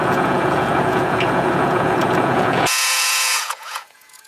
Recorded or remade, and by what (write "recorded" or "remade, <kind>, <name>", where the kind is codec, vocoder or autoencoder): remade, vocoder, Vocos